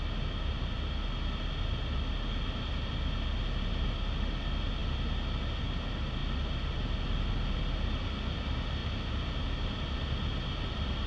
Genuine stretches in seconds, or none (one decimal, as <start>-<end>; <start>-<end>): 0.0-11.1